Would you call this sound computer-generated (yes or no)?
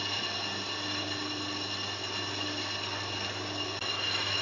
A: yes